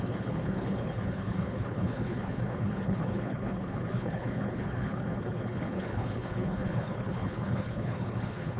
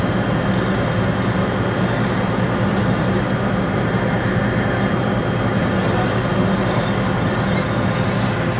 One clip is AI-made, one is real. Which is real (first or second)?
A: second